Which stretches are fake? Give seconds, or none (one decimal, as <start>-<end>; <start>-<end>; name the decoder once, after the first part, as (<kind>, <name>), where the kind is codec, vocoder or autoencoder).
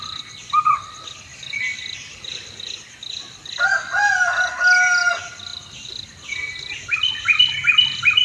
none